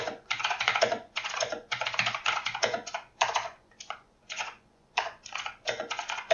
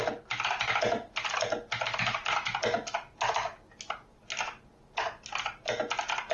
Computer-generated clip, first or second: first